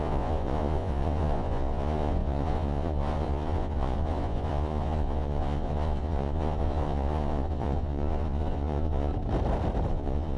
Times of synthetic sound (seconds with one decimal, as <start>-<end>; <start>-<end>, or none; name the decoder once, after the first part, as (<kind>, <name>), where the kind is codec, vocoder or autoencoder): 0.0-9.1 (vocoder, Vocos); 9.9-10.4